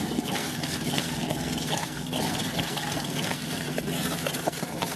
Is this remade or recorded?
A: remade